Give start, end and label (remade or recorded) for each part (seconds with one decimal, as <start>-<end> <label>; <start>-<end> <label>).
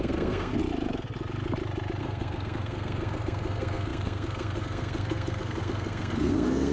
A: 0.0-0.6 remade; 0.6-2.0 recorded; 2.0-6.7 remade